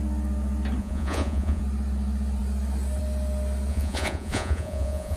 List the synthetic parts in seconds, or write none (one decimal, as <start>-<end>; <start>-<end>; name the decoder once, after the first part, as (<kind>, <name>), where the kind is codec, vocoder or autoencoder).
0.8-1.6 (vocoder, Vocos); 3.7-5.2